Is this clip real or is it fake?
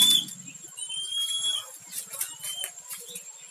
real